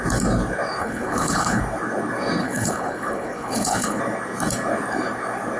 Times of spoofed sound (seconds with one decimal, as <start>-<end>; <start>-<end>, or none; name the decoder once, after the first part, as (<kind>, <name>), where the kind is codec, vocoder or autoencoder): 0.8-1.6 (codec, HILCodec); 2.4-4.0